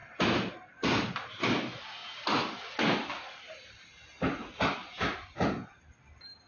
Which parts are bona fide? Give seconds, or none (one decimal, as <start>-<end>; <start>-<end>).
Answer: 1.5-3.1; 4.0-6.5